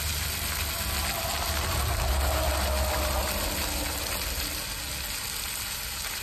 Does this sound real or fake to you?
real